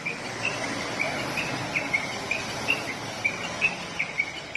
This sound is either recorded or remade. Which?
recorded